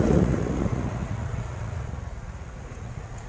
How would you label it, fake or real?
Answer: fake